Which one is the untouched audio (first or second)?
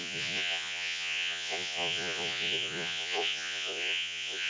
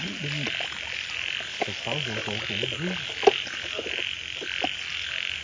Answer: second